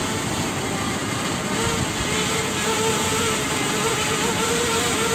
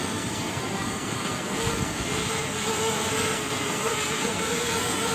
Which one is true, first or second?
first